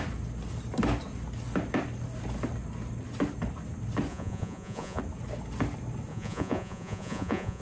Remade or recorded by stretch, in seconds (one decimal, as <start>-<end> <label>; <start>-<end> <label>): 0.0-4.1 recorded; 4.1-5.0 remade; 5.0-6.1 recorded; 6.1-7.6 remade

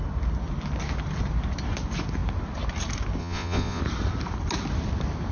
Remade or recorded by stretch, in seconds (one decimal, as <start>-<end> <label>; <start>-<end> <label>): 0.0-3.2 recorded; 3.2-3.8 remade; 3.8-5.3 recorded